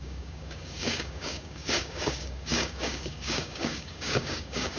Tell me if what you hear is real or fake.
fake